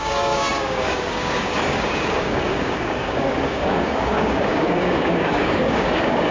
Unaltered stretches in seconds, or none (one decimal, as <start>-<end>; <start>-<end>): none